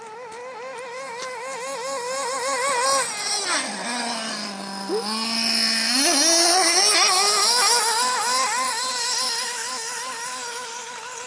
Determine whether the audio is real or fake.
real